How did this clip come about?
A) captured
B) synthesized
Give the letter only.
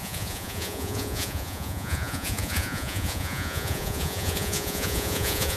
B